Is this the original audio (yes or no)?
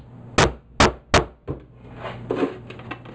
yes